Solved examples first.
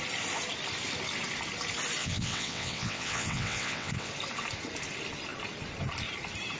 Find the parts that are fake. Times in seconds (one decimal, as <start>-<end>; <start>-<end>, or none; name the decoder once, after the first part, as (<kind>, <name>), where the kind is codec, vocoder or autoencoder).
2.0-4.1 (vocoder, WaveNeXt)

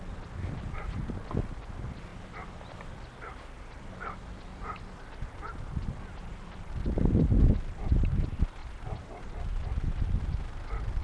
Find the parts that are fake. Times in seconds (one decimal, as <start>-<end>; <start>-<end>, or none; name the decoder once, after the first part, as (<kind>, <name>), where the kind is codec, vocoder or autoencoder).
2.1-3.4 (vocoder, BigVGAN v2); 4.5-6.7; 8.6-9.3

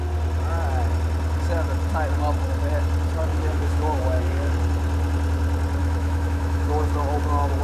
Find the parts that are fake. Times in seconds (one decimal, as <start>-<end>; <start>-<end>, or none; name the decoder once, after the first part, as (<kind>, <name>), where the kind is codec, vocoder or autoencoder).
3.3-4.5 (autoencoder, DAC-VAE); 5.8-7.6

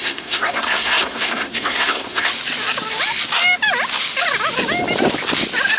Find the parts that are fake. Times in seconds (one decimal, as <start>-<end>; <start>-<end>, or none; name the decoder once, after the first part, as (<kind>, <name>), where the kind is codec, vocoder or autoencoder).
0.0-2.3 (codec, SNAC)